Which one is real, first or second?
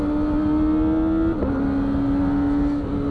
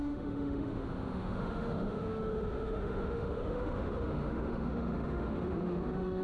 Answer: first